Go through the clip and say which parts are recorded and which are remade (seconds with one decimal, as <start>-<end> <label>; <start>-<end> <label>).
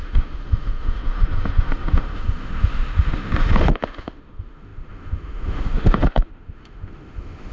0.0-7.5 remade